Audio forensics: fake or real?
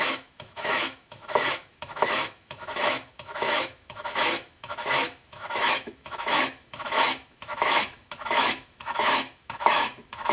fake